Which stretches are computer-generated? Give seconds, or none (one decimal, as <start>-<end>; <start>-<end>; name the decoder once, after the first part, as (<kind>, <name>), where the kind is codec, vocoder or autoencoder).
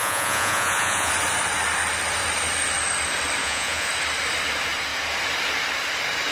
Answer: 0.0-1.1 (vocoder, Vocos); 3.4-3.9